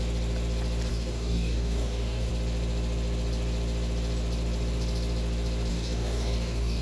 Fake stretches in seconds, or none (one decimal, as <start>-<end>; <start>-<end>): 0.9-2.3; 5.7-6.8